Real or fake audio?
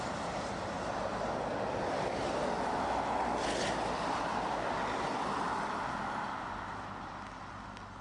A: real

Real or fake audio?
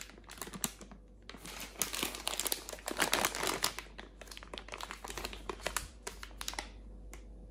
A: real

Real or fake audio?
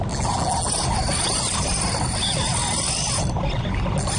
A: real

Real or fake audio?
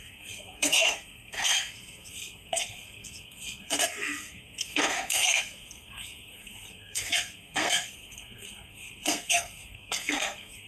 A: fake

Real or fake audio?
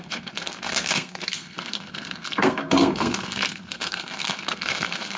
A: fake